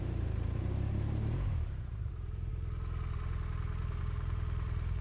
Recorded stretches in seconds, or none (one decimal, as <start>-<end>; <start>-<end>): 2.5-4.0